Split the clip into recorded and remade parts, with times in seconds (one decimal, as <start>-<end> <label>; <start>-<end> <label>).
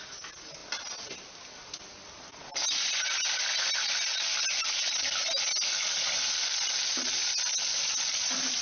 0.0-8.6 recorded